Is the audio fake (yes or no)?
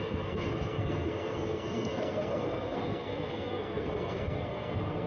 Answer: yes